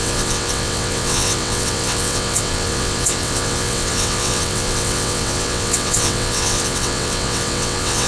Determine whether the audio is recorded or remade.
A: remade